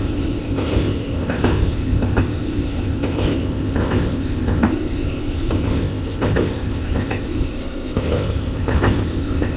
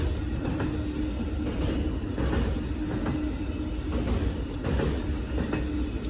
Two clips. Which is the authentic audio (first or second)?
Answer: second